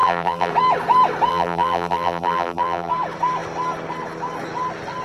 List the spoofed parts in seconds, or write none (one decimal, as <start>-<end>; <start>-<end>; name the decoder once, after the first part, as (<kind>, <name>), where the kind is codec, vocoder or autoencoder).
0.0-0.5 (vocoder, BigVGAN v2); 1.3-2.9